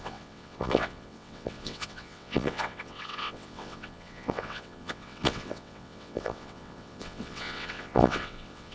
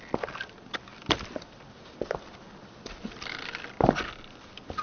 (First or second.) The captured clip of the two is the second